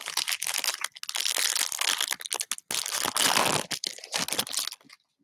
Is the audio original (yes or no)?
yes